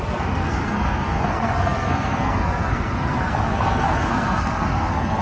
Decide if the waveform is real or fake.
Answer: fake